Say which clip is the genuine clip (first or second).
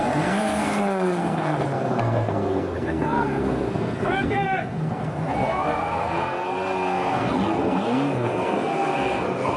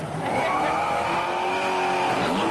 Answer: second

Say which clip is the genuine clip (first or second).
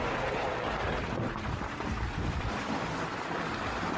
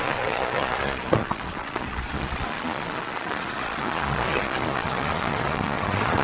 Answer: first